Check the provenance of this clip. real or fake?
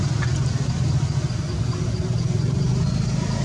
real